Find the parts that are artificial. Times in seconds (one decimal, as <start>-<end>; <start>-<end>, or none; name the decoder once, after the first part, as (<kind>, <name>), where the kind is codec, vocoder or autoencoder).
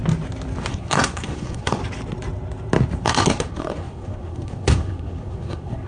0.7-1.8 (codec, SNAC); 3.0-5.9